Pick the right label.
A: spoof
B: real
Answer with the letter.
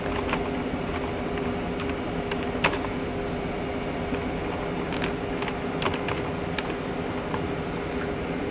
B